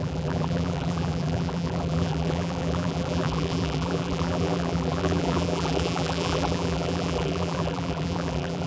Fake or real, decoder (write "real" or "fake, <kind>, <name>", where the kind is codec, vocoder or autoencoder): fake, vocoder, BigVGAN v2